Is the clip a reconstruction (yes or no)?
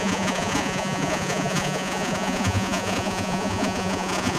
yes